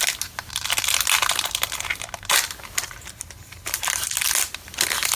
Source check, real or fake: real